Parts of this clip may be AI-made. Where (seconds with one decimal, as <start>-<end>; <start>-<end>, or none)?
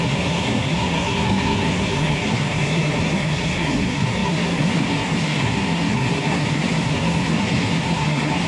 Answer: 0.0-8.5